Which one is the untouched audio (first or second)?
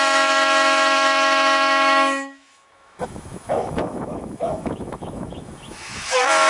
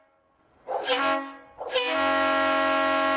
second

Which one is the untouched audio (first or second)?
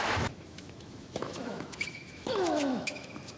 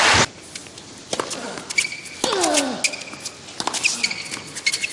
second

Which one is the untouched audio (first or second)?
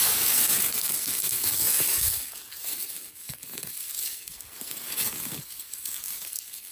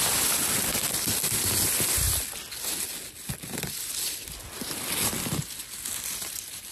second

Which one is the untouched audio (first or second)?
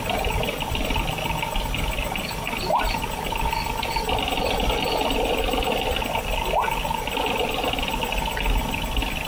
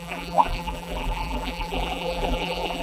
first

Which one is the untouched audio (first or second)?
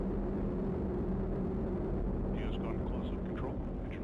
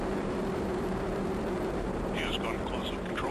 first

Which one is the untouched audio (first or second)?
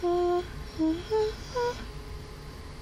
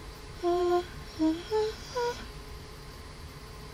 first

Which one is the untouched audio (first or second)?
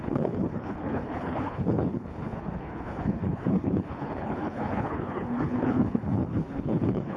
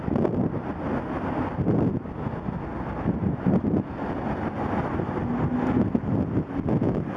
second